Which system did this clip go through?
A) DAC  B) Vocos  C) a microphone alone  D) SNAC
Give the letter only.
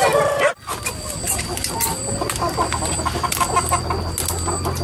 C